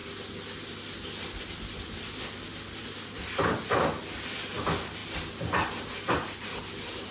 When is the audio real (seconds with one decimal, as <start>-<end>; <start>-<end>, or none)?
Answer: 0.0-7.1